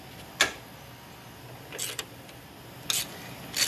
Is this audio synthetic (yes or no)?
no